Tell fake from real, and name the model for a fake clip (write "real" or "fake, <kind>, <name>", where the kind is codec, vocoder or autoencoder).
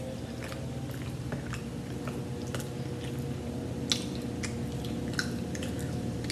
real